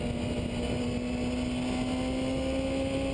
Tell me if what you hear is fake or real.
real